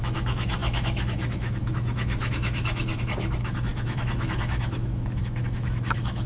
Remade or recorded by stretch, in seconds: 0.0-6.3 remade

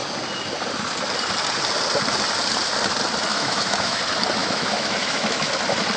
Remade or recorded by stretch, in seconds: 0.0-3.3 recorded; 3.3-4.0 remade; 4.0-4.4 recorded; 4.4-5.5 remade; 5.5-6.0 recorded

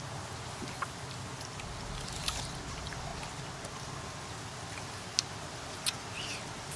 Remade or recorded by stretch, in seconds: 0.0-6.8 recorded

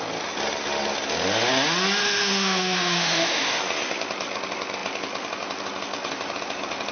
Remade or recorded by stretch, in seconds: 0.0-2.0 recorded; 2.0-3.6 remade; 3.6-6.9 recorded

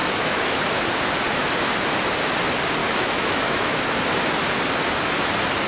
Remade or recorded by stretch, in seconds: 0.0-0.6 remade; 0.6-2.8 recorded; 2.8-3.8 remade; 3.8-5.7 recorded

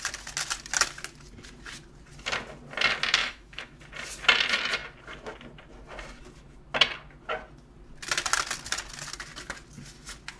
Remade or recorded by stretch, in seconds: 0.0-3.2 recorded; 3.2-3.8 remade; 3.8-10.4 recorded

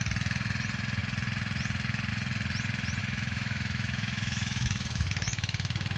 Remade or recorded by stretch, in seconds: 0.0-3.0 recorded; 3.0-6.0 remade